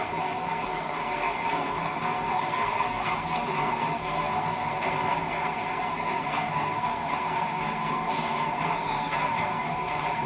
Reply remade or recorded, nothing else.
remade